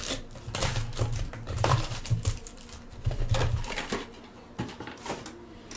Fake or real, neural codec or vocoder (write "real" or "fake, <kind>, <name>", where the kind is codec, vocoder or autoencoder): real